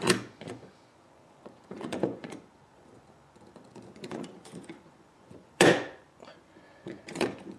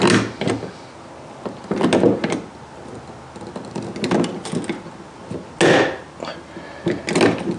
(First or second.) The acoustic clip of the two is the second